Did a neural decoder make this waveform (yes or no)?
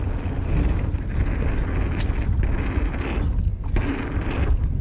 no